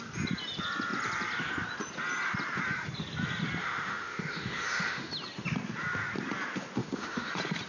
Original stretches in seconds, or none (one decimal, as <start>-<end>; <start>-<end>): 0.0-3.6; 5.1-6.8; 7.3-7.7